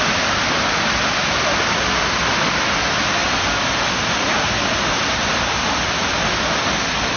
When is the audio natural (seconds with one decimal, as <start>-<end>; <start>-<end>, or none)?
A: 0.0-7.2

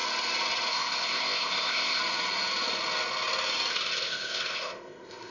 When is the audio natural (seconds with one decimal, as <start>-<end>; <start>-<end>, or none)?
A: 0.0-0.7; 2.0-3.7

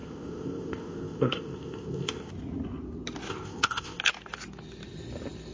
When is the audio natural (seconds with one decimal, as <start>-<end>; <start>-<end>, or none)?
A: 2.3-3.3; 4.0-5.5

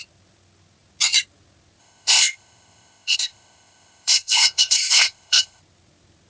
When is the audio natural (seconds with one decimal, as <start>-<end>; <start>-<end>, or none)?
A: 0.0-1.8; 5.6-6.3

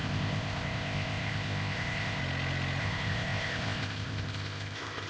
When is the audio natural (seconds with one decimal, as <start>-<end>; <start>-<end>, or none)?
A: 2.2-2.8

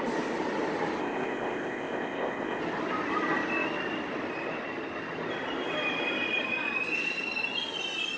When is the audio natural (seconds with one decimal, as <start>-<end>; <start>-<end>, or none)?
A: 0.0-1.0; 2.6-8.2

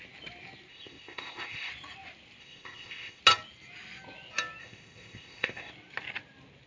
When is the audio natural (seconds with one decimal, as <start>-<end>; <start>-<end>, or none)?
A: 0.0-0.7; 1.7-2.4; 3.2-4.6; 5.7-6.7

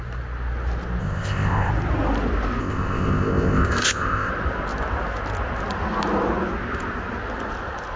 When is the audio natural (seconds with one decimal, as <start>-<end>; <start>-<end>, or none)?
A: 0.0-1.0; 1.7-2.6; 4.3-8.0